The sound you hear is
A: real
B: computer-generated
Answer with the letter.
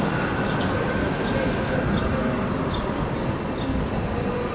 A